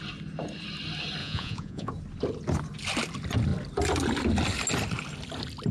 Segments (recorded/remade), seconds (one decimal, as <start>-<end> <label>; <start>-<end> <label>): 0.0-1.2 recorded; 1.2-1.9 remade; 1.9-5.7 recorded